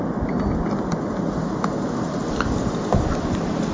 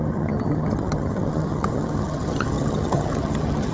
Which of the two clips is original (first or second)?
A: first